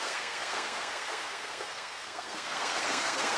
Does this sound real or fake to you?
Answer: fake